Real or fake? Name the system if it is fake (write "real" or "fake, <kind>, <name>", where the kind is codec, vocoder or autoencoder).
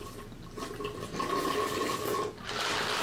real